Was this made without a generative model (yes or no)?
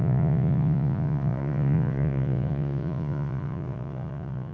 no